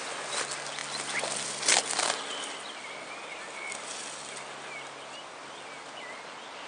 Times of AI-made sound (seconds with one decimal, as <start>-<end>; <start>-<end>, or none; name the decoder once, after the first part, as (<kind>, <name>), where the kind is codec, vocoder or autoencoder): none